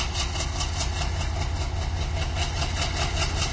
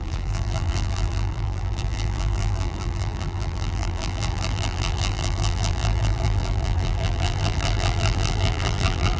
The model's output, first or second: second